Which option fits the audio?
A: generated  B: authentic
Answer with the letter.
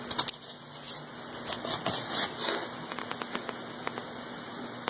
B